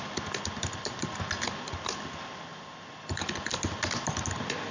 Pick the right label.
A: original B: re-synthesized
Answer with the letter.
A